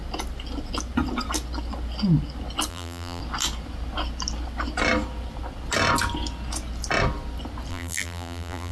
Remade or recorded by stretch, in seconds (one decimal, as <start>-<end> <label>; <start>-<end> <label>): 0.0-2.7 recorded; 2.7-3.2 remade; 3.2-7.7 recorded; 7.7-8.7 remade